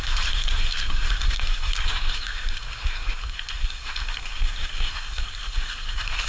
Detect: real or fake fake